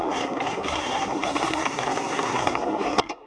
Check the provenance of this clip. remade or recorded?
remade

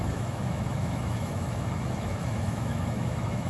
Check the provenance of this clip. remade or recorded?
remade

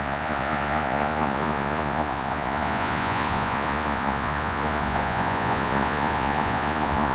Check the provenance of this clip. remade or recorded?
remade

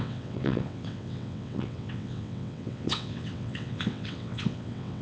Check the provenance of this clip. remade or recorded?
remade